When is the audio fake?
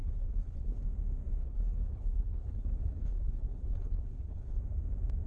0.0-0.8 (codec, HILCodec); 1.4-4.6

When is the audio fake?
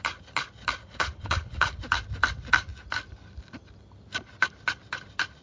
0.8-1.8 (codec, HILCodec)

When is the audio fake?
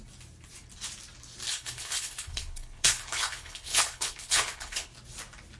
1.5-4.9 (codec, HILCodec)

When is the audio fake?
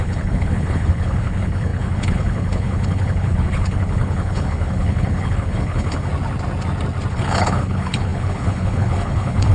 0.0-6.1 (codec, HILCodec); 7.1-9.5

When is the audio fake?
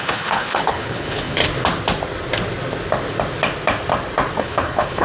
0.0-1.4 (codec, HILCodec); 4.4-5.0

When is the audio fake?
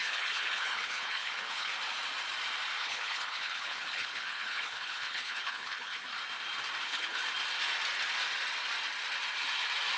0.0-1.7 (codec, HILCodec); 2.8-6.1; 6.8-7.2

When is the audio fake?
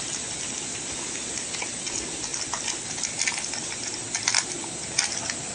none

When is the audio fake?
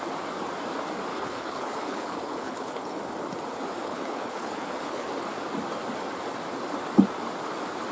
1.1-3.0 (codec, HILCodec); 3.8-5.1